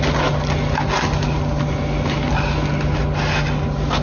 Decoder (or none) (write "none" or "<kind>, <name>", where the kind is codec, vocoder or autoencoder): none